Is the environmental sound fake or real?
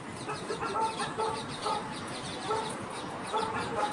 real